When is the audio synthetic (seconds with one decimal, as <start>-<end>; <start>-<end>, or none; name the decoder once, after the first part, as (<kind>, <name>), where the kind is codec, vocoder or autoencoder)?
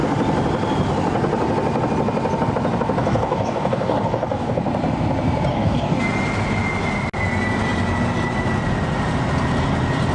3.0-4.6 (codec, DAC); 5.5-6.0